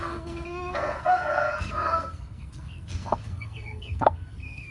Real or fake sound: fake